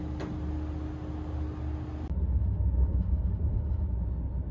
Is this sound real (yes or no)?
yes